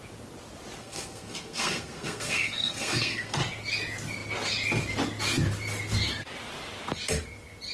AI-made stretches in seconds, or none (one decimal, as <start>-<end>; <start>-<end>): 0.8-3.4